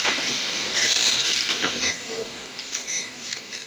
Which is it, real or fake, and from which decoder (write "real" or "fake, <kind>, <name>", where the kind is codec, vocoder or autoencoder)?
fake, codec, DAC